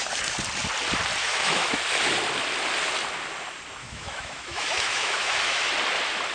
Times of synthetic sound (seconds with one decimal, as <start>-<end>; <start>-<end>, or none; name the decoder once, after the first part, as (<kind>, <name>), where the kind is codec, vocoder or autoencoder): 1.2-1.8 (autoencoder, DAC-VAE); 3.8-5.7